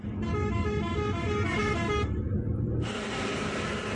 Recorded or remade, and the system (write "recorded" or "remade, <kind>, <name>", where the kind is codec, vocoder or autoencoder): recorded